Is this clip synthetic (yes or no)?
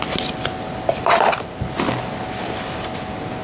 no